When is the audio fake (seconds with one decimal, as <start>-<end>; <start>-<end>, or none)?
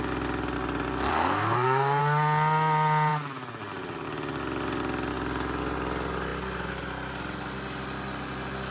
1.1-2.0